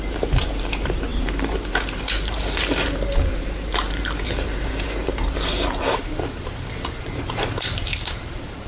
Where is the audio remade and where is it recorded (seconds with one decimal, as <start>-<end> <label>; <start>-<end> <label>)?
0.0-8.7 remade